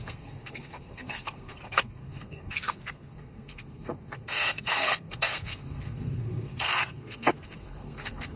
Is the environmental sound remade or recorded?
remade